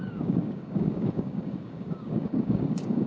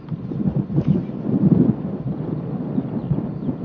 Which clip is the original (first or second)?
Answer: second